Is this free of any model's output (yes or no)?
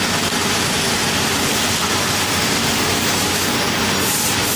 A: yes